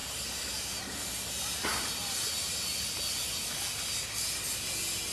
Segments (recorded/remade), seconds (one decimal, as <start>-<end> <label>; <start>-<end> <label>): 0.0-0.8 remade; 0.8-5.1 recorded